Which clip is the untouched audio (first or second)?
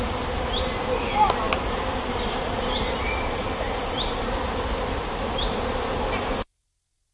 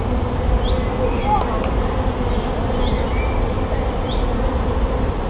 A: second